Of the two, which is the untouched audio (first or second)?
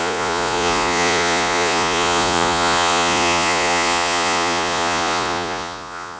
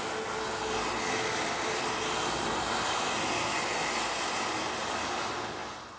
second